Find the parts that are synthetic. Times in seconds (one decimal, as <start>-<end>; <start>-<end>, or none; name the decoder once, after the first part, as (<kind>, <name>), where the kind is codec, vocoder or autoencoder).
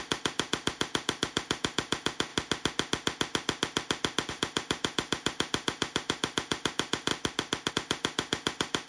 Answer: 0.0-2.3 (vocoder, BigVGAN v2); 4.3-7.1; 7.7-8.9